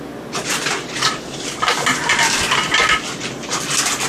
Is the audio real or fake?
real